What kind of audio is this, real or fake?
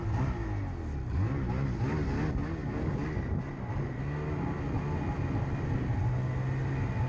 real